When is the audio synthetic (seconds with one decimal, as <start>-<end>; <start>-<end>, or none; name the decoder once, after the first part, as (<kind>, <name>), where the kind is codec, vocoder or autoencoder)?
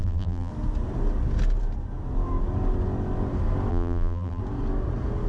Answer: 0.0-0.5 (vocoder, BigVGAN v2); 3.7-4.4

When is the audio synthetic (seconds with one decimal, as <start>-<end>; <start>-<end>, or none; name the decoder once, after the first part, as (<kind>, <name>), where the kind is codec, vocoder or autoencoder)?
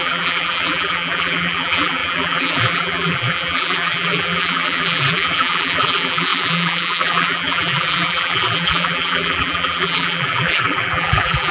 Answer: 0.0-11.5 (vocoder, BigVGAN v2)